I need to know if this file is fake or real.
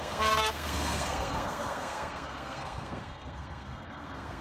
fake